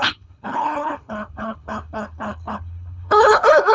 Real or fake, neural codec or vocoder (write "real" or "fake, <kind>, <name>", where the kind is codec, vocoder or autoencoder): fake, codec, HILCodec